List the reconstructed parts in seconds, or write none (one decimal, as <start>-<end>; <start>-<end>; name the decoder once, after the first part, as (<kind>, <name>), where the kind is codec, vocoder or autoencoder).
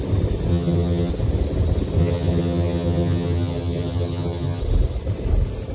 0.5-1.1 (vocoder, HiFi-GAN); 2.0-4.6